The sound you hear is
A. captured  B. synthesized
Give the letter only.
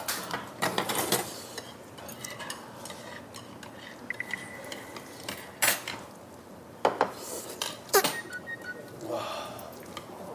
A